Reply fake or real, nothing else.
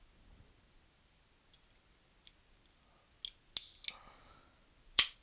real